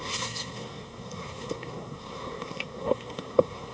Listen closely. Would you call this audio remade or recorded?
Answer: remade